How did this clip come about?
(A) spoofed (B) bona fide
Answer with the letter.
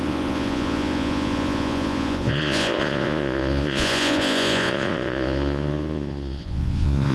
A